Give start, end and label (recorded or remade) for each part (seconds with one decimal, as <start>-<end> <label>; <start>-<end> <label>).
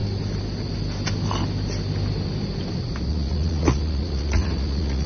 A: 0.0-3.1 recorded; 3.1-5.1 remade